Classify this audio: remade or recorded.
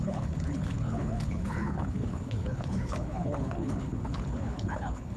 remade